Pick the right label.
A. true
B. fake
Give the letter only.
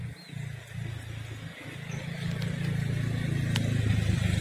A